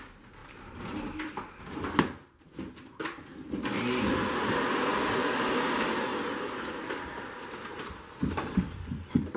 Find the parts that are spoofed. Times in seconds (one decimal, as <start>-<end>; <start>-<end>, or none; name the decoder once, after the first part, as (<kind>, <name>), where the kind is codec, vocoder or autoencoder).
0.4-3.0 (vocoder, BigVGAN v2); 4.9-7.9